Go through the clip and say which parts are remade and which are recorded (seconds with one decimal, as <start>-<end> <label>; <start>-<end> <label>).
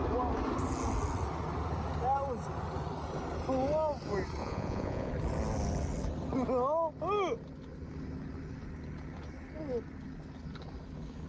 0.0-4.4 recorded; 4.4-5.1 remade; 5.1-11.3 recorded